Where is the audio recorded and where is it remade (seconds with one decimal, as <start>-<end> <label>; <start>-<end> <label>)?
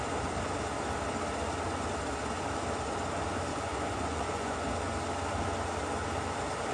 0.0-3.5 recorded; 3.5-4.6 remade; 4.6-6.7 recorded